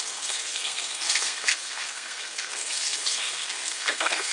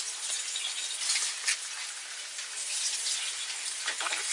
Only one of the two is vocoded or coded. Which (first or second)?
first